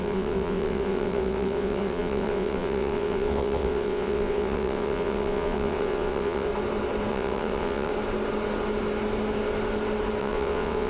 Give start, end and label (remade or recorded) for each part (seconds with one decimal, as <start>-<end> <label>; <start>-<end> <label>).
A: 0.0-6.5 remade; 6.5-7.1 recorded; 7.1-7.9 remade; 7.9-10.2 recorded; 10.2-10.9 remade